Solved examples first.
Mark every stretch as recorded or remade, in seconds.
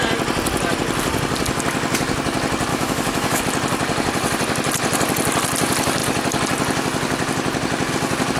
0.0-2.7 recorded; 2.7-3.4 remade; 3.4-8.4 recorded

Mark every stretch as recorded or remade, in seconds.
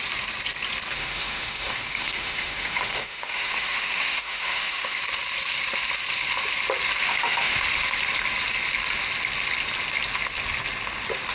0.0-1.0 recorded; 1.0-5.0 remade; 5.0-7.0 recorded; 7.0-7.6 remade; 7.6-11.3 recorded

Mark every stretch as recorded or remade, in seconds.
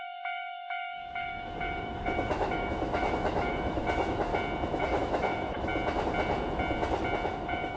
0.0-4.3 remade; 4.3-4.8 recorded; 4.8-5.7 remade; 5.7-7.3 recorded; 7.3-7.8 remade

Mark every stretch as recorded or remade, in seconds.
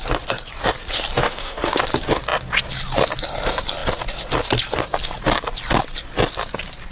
0.0-1.2 recorded; 1.2-1.8 remade; 1.8-6.9 recorded